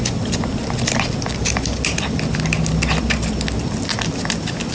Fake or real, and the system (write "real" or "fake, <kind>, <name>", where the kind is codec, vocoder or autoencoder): real